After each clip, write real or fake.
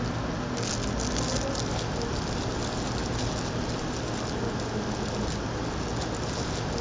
real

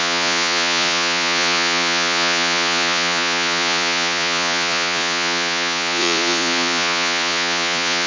fake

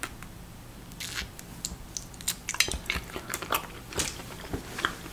real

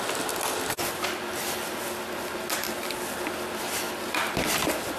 real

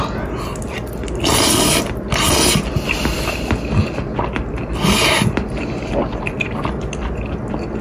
real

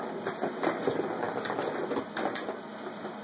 real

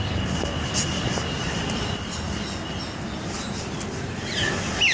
real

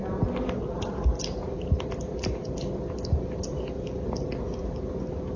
real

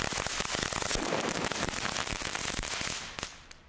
real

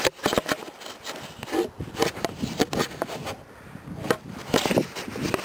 real